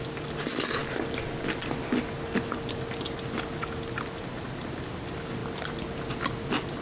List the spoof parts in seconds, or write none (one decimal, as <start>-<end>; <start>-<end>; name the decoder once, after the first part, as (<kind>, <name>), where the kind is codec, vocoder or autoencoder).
none